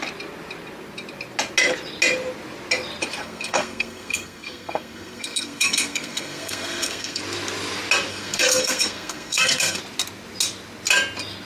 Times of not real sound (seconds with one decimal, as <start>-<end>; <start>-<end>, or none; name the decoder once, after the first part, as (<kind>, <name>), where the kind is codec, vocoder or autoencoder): 3.2-7.2 (codec, SNAC); 8.1-9.8